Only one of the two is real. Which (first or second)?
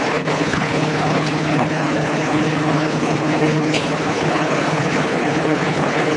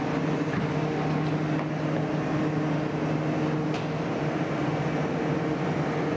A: second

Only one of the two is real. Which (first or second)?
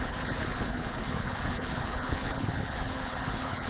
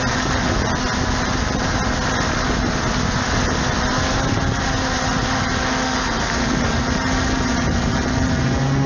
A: second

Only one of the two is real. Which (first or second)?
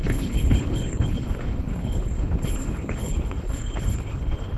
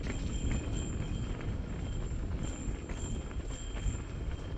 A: second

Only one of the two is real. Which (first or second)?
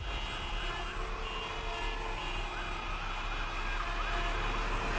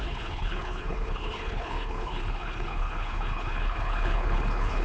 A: first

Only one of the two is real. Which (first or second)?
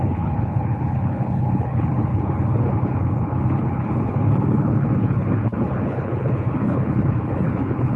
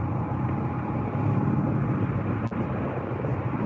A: second